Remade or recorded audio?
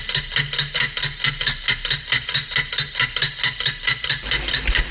recorded